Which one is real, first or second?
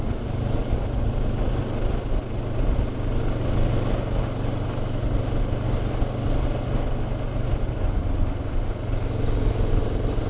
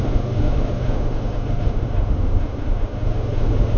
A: first